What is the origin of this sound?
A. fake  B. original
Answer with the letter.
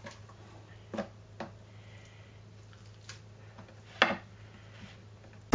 B